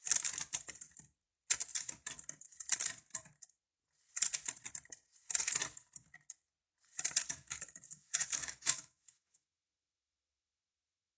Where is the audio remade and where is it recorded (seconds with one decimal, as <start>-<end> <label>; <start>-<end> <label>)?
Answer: 0.0-7.2 recorded; 7.2-11.2 remade